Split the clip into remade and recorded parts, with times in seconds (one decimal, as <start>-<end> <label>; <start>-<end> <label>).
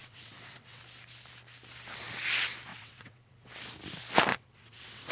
0.0-0.8 remade; 0.8-2.7 recorded; 2.7-3.5 remade; 3.5-4.3 recorded; 4.3-5.1 remade